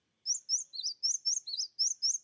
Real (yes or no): yes